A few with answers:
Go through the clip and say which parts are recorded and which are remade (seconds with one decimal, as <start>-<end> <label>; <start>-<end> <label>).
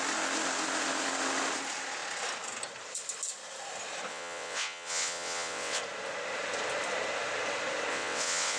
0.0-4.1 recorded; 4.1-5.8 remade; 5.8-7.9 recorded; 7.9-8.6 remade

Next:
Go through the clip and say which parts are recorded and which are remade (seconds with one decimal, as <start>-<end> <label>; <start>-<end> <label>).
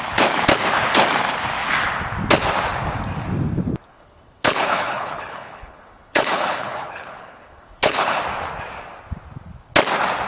0.0-3.9 recorded; 3.9-8.2 remade; 8.2-10.3 recorded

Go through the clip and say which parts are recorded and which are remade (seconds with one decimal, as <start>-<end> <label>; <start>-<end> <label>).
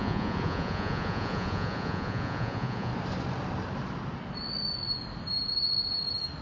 0.0-2.9 remade; 2.9-6.4 recorded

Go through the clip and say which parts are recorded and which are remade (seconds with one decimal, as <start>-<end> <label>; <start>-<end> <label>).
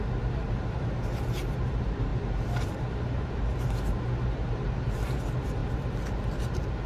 0.0-6.9 remade